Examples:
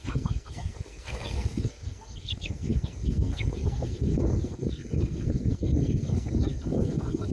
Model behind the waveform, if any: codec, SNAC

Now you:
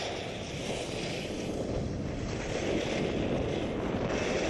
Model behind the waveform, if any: none